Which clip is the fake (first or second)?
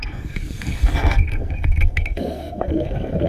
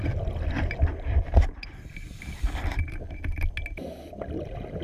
first